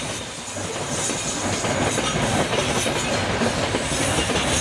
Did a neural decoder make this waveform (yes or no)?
no